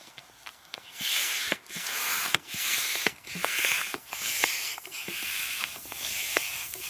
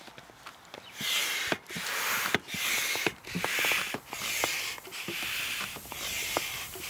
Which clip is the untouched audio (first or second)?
second